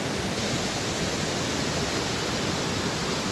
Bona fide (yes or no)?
yes